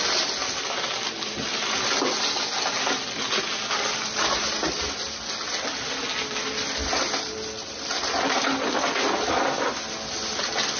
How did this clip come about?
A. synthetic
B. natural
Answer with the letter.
B